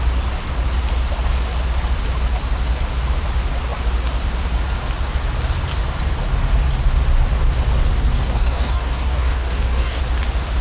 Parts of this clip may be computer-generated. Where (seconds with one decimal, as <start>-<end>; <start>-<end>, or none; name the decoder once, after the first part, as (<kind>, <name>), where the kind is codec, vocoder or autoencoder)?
8.1-10.0 (codec, DAC)